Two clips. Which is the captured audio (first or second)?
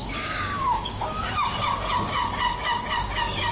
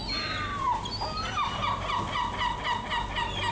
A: second